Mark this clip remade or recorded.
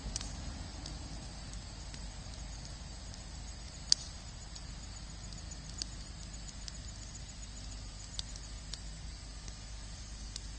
recorded